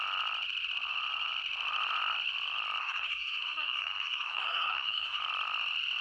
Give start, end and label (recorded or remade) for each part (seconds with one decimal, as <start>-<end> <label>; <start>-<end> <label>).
0.0-2.8 recorded; 2.8-5.2 remade; 5.2-6.0 recorded

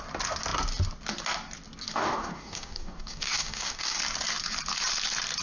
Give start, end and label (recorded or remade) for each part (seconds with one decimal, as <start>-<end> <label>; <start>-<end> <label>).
0.0-1.9 recorded; 1.9-4.0 remade; 4.0-5.4 recorded

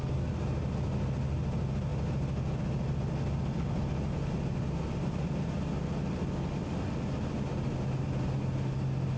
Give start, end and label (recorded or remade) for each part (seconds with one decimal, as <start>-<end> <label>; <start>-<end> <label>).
0.0-9.2 recorded

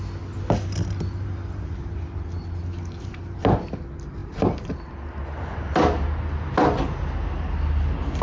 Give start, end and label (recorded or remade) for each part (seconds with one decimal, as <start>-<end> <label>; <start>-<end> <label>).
0.0-8.2 recorded